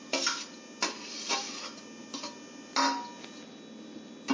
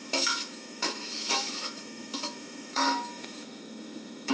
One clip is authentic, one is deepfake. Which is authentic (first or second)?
first